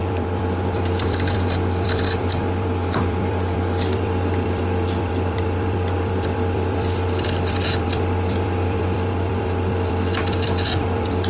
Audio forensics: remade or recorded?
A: remade